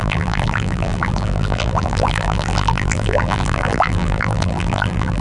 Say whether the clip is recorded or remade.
remade